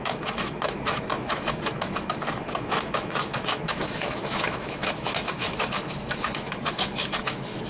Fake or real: fake